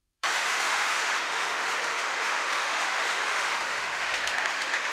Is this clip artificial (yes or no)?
yes